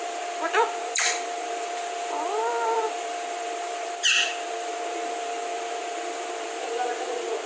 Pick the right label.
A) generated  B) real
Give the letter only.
A